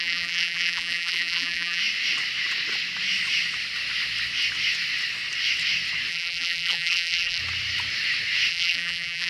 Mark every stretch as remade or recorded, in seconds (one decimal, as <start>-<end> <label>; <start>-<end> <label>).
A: 0.0-1.8 remade; 1.8-6.1 recorded; 6.1-7.4 remade; 7.4-8.5 recorded; 8.5-9.3 remade